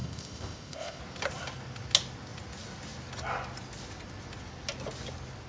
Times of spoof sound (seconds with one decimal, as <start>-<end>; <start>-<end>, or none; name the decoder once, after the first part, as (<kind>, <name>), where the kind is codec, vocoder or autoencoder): 0.0-1.0 (codec, ZipCodec)